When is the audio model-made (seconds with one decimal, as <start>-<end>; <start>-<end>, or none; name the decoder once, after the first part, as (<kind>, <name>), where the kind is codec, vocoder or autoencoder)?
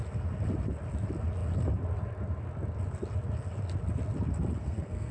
4.6-5.1 (codec, SNAC)